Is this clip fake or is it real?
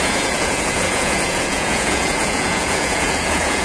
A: fake